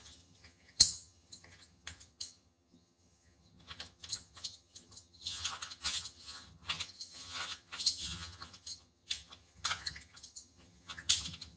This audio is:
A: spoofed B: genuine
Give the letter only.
A